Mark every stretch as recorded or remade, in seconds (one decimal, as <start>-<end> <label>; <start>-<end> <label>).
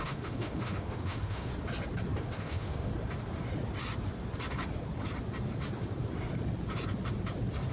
0.0-1.5 remade; 1.5-2.2 recorded; 2.2-2.9 remade; 2.9-7.7 recorded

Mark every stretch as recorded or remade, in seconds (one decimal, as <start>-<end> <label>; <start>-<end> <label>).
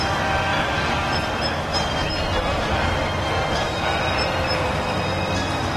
0.0-5.8 recorded